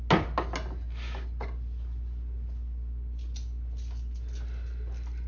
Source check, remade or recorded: recorded